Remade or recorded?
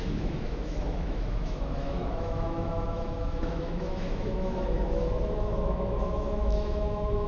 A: remade